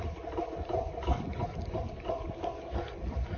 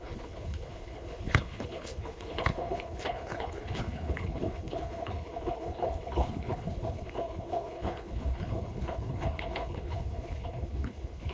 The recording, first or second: first